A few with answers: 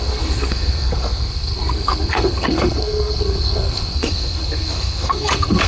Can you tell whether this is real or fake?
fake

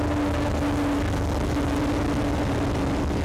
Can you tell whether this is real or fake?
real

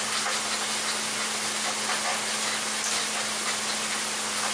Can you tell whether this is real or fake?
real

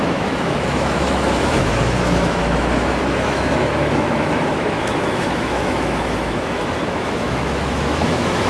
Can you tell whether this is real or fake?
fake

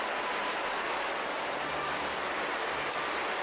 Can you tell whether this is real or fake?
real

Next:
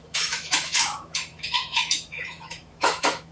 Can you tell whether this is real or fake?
fake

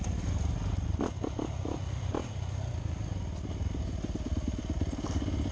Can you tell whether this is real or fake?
real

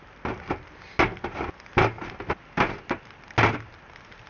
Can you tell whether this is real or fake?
real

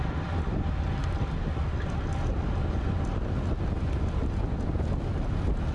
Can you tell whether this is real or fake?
real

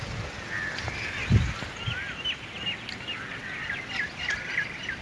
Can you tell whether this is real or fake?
real